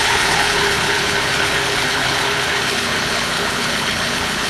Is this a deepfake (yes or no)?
yes